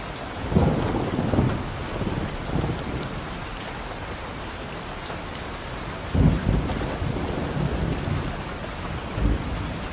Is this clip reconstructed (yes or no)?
no